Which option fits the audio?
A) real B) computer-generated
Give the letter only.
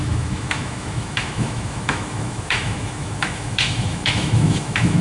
B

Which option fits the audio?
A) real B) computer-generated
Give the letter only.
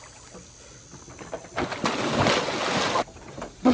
A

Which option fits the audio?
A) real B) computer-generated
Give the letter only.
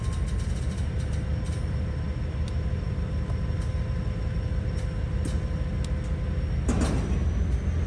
A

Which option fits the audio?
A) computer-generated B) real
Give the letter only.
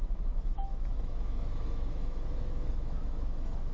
A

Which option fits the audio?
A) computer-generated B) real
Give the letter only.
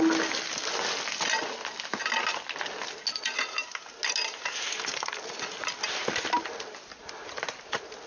B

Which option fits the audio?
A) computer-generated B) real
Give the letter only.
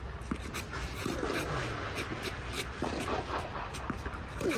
B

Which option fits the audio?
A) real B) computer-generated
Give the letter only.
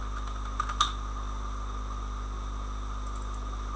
A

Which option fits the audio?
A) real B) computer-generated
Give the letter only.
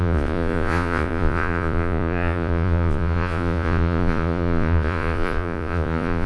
B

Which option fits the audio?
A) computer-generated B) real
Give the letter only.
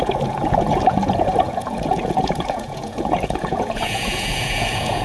A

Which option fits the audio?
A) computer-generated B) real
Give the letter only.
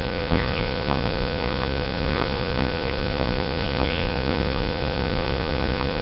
A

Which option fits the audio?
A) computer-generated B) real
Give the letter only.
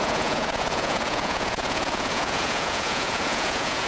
A